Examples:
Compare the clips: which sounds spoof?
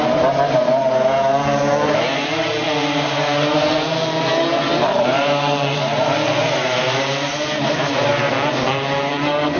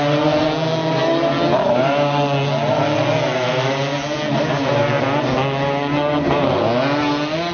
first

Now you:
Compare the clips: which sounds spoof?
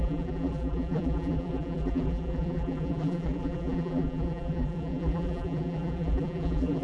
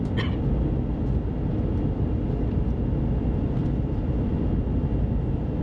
first